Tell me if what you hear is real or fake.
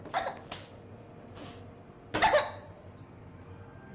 real